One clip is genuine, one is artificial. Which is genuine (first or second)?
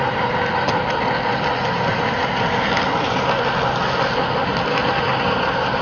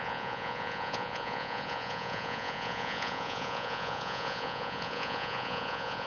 first